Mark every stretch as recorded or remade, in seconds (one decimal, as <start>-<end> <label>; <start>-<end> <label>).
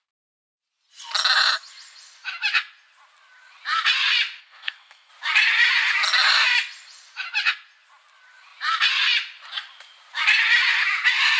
0.0-4.4 recorded; 4.4-5.1 remade; 5.1-11.4 recorded